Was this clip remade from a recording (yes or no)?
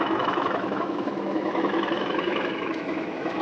yes